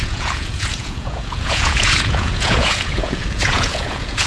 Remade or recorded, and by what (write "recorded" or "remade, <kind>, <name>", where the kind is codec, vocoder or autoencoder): remade, vocoder, Vocos